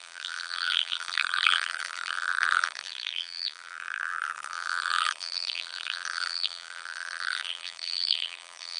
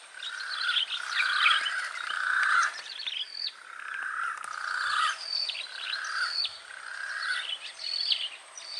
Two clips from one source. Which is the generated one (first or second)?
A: first